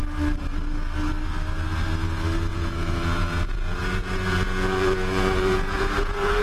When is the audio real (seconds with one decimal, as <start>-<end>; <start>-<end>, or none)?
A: 0.0-2.5